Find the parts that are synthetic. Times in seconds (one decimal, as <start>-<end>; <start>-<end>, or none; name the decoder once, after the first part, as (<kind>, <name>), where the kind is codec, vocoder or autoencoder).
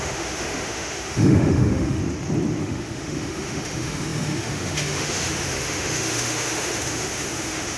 0.0-2.0 (autoencoder, DAC-VAE); 2.6-7.8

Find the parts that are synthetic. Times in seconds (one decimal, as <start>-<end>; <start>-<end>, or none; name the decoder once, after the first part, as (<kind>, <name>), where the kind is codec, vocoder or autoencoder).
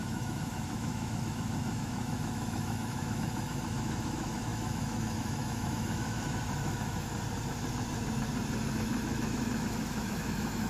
0.0-7.1 (autoencoder, DAC-VAE); 8.7-10.7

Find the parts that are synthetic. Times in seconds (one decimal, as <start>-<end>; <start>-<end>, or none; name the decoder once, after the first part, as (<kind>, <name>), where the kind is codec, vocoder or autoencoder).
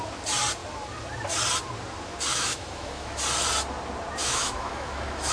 2.3-3.2 (autoencoder, DAC-VAE); 4.2-5.3